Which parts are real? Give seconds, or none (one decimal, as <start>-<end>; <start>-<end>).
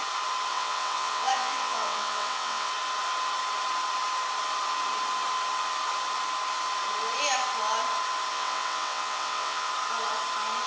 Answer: 0.0-0.5; 2.7-8.3; 9.7-10.7